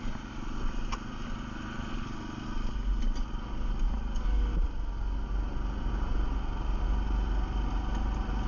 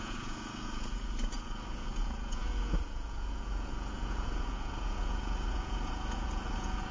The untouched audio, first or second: first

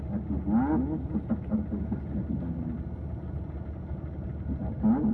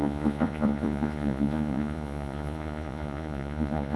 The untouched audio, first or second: first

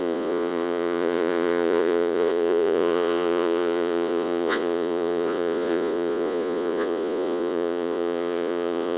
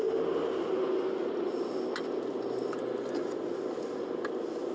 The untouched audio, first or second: second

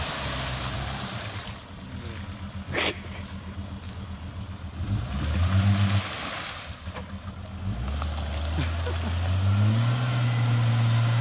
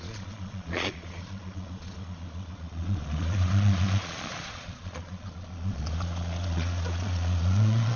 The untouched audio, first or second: first